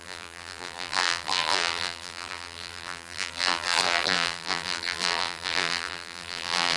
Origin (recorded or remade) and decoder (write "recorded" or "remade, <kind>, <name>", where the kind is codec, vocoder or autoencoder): remade, vocoder, BigVGAN v2